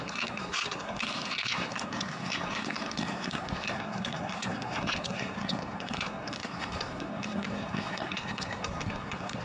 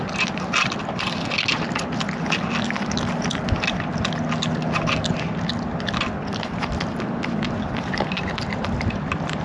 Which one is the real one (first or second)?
second